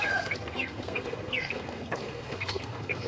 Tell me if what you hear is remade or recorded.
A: remade